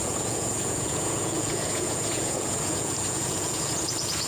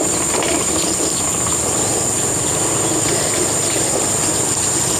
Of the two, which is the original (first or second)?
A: second